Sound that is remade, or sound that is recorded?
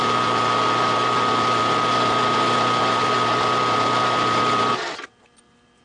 recorded